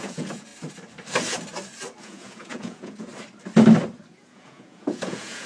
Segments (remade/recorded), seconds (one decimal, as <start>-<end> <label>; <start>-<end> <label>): 0.0-0.5 remade; 0.5-2.0 recorded; 2.0-3.1 remade; 3.1-4.1 recorded; 4.1-5.5 remade